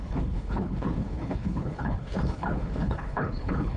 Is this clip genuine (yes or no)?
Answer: no